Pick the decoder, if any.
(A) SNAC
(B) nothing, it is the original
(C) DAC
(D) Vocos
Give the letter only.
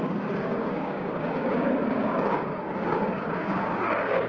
C